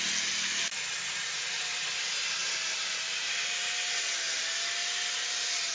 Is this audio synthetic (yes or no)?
no